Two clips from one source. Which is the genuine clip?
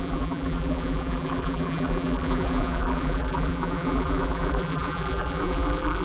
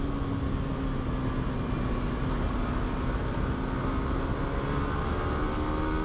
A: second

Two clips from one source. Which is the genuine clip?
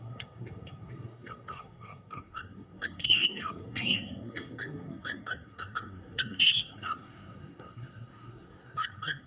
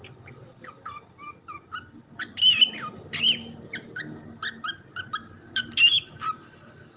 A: second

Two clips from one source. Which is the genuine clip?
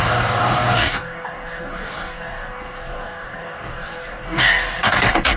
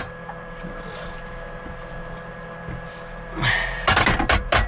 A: second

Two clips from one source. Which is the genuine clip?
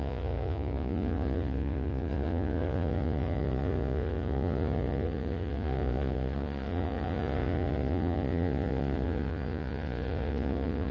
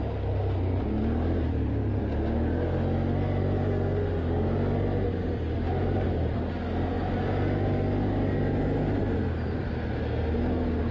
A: second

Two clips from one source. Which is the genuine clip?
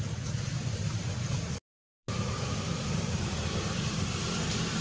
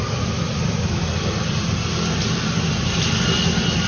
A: second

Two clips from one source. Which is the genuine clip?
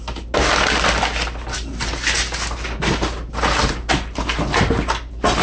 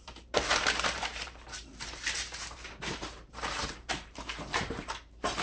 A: first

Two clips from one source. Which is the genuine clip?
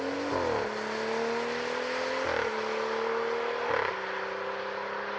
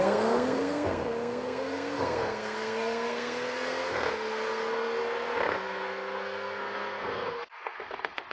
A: first